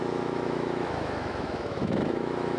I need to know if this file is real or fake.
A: fake